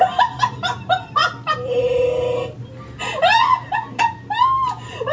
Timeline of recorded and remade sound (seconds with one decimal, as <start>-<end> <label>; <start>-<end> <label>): 0.0-5.1 recorded